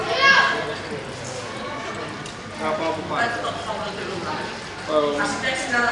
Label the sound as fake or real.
real